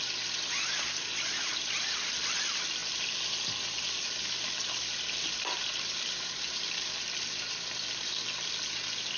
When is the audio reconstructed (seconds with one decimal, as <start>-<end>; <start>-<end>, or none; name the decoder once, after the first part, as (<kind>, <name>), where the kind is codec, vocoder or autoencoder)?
none